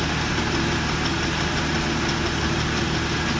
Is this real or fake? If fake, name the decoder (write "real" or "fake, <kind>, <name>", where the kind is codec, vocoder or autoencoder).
real